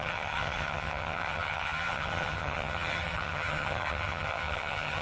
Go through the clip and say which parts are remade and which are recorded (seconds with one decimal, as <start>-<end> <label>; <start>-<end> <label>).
0.0-5.0 remade